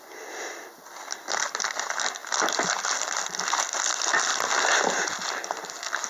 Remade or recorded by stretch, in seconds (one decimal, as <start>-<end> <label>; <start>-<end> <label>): 0.0-4.3 recorded; 4.3-4.8 remade; 4.8-6.1 recorded